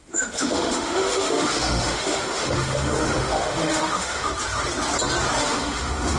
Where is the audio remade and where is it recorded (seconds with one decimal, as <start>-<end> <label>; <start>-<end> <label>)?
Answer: 0.0-4.3 remade; 4.3-5.4 recorded; 5.4-6.2 remade